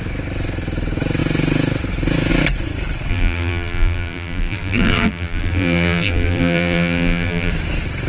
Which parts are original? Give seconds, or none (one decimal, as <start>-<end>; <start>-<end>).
0.0-3.1; 7.5-8.1